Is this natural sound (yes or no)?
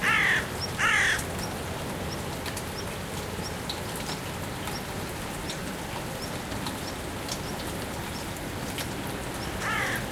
yes